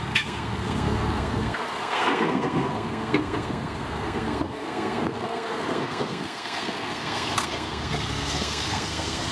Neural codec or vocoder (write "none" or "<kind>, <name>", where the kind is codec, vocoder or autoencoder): codec, SNAC